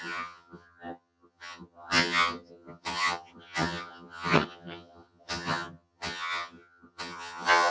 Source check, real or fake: fake